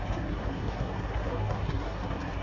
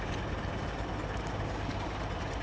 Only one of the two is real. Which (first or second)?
second